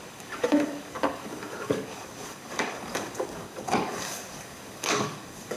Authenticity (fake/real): fake